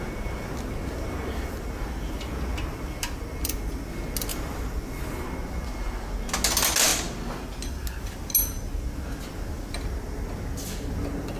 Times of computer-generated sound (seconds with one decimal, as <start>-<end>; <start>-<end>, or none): 4.3-4.8